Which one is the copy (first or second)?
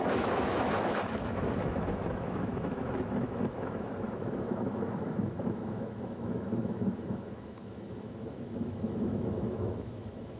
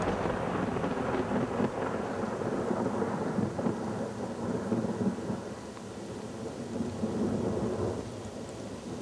first